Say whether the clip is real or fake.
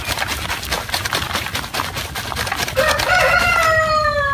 real